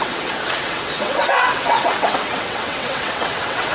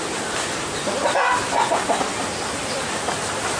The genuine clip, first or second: second